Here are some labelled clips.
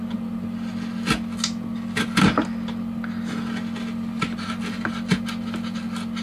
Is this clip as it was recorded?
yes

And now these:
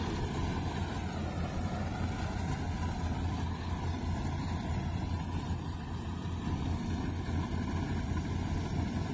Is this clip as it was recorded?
yes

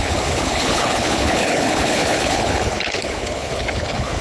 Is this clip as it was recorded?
no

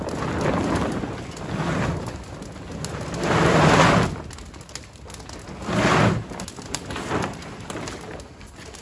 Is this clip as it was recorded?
yes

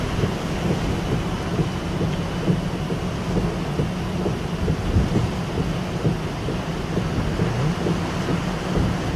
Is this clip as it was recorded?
yes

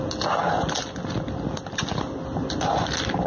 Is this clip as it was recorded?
yes